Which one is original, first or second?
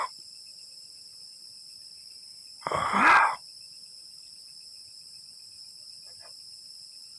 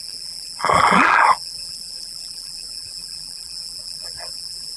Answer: first